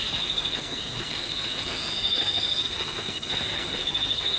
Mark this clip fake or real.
fake